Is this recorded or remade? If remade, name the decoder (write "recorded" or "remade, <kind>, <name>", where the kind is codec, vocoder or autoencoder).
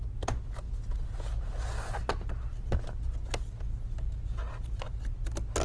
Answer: recorded